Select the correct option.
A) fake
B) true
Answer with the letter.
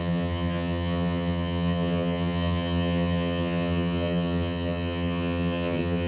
A